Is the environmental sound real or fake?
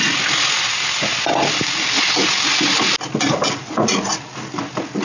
real